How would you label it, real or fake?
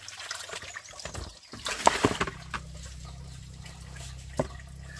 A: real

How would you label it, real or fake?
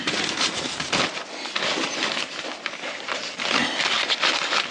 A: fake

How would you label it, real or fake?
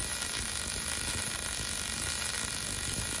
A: real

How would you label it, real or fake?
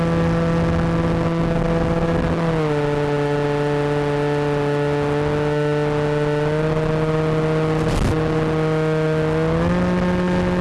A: real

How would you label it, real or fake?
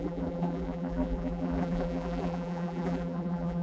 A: fake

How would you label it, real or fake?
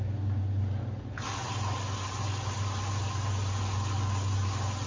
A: real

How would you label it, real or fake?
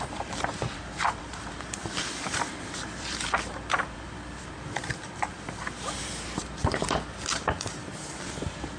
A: fake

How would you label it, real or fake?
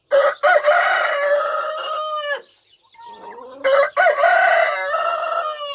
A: real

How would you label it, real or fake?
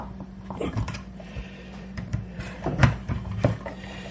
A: fake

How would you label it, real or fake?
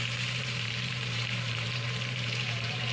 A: fake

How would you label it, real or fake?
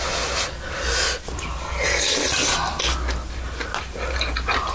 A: real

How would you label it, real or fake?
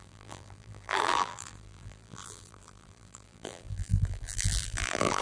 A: fake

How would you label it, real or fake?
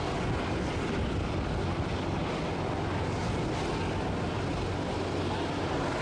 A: real